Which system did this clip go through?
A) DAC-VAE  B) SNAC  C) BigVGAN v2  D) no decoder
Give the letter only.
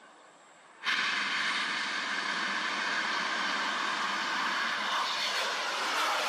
D